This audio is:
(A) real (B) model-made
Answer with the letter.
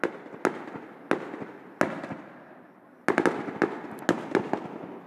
A